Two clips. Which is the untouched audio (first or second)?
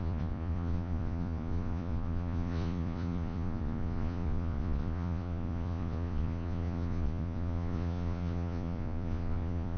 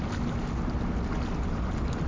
second